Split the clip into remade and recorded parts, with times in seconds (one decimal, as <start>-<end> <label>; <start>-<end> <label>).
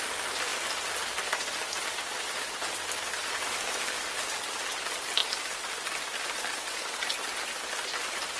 0.0-8.4 recorded